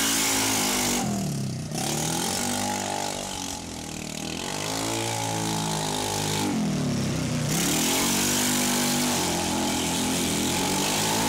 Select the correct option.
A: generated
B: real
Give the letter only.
B